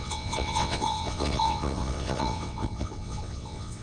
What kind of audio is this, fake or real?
fake